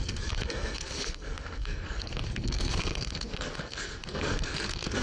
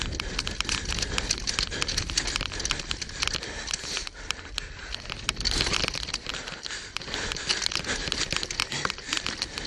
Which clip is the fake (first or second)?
first